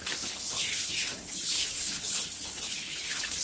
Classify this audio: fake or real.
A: fake